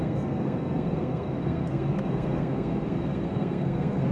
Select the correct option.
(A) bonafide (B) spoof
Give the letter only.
B